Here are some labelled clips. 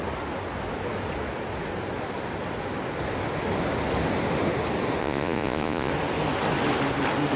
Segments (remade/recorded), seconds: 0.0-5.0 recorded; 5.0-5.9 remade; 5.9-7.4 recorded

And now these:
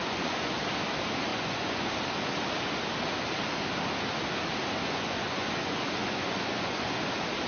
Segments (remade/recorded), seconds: 0.0-0.6 remade; 0.6-1.3 recorded; 1.3-1.9 remade; 1.9-4.8 recorded; 4.8-7.1 remade; 7.1-7.5 recorded

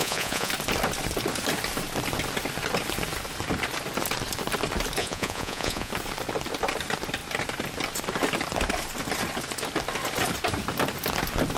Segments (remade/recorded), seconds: 0.0-0.5 remade; 0.5-5.0 recorded; 5.0-5.9 remade; 5.9-11.6 recorded

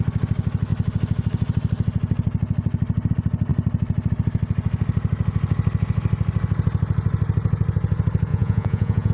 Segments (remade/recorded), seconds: 0.0-8.3 recorded; 8.3-9.1 remade